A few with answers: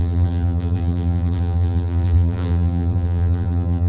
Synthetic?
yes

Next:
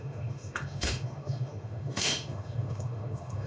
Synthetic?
yes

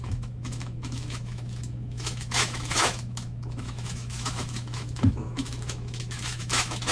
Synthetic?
yes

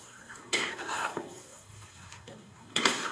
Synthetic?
yes